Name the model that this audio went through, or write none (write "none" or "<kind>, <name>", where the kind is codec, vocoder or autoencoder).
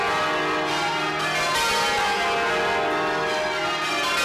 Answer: none